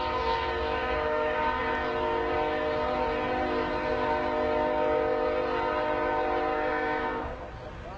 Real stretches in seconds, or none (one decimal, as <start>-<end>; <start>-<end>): 0.0-0.8; 1.6-6.5; 7.4-8.0